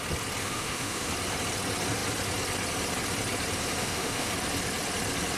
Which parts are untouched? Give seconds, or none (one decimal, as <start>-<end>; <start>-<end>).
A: 0.0-0.4; 1.1-3.8; 4.3-5.4

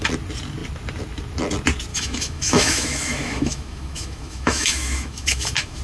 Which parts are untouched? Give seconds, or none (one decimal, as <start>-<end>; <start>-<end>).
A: 0.0-1.9

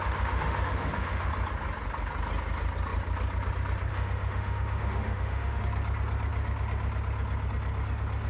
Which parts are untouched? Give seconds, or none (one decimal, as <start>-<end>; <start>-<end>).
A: 1.3-3.9; 5.6-8.3

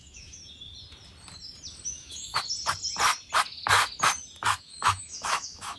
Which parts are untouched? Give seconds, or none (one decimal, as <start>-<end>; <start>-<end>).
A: 0.4-1.9; 2.3-4.6